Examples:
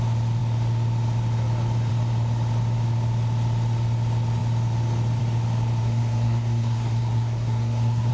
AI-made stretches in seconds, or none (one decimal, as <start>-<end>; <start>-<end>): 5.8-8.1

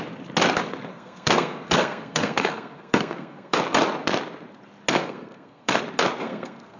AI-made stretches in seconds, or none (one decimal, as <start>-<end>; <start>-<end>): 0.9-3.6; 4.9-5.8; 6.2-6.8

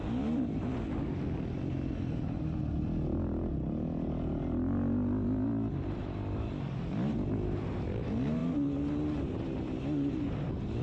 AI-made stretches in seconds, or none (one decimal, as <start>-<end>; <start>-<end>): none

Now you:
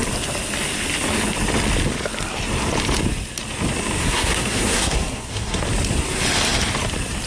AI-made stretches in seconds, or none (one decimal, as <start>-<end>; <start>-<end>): 4.0-5.6